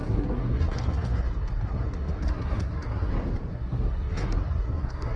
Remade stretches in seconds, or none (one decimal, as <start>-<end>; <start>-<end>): 0.0-3.1; 3.5-5.2